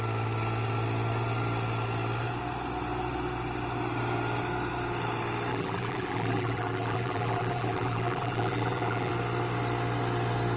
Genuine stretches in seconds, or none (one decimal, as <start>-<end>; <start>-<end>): 0.0-5.5; 9.1-10.6